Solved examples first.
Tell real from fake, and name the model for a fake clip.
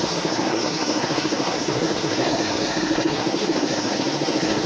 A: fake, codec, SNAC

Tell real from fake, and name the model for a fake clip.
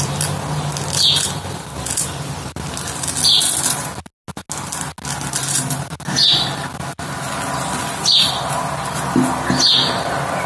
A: real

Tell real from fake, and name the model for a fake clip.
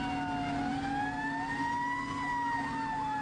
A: real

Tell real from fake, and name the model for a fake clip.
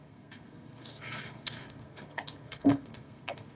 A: fake, codec, SNAC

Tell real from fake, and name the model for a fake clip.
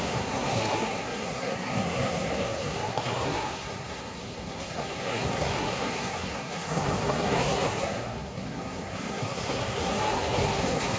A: fake, codec, SNAC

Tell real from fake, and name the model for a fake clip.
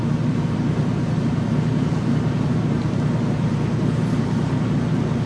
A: real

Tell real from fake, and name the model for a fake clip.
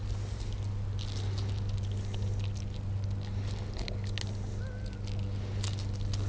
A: real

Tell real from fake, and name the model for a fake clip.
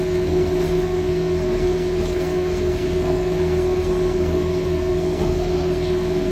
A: fake, codec, SNAC